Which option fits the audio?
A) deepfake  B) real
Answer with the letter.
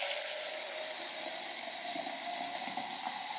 B